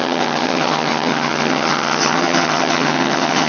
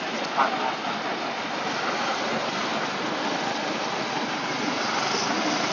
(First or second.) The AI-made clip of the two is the first